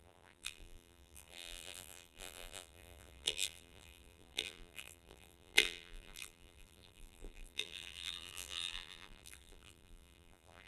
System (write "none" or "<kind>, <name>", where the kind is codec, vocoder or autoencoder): vocoder, BigVGAN v2